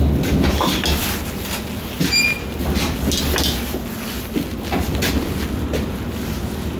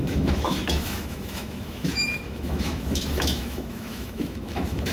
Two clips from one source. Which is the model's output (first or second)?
second